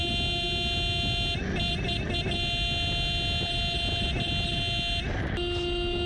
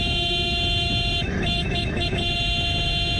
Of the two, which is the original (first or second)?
first